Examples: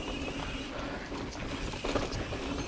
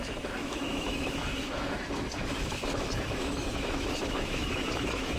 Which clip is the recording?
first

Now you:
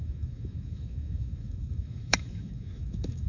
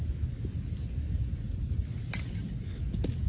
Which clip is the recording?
second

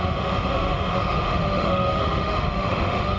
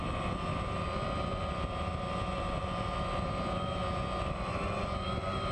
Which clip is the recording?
second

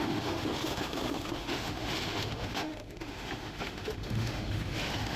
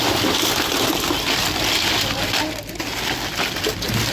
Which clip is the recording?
second